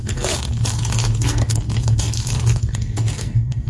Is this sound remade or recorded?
remade